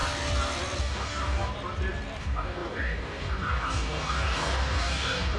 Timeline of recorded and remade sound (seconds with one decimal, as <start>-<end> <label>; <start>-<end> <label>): 0.0-0.8 recorded; 0.8-1.5 remade; 1.5-2.2 recorded; 2.2-5.4 remade